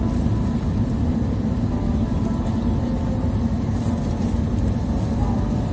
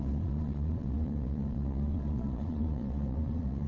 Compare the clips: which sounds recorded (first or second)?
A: first